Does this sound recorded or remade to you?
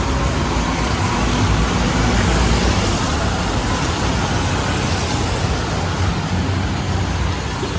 recorded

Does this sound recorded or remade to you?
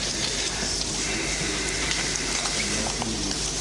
remade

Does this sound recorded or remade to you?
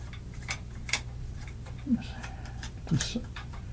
remade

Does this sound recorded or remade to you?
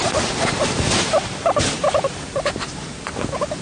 remade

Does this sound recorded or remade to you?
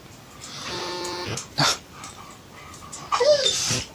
recorded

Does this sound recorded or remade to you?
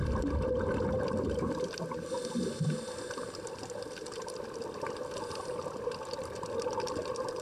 recorded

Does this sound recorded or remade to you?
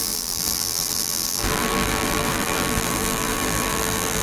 remade